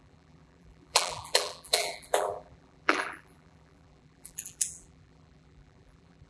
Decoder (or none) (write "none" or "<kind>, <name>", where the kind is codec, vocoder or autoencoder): vocoder, BigVGAN v2